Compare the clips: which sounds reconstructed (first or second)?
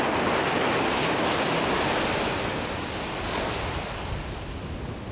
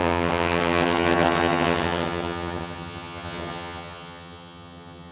second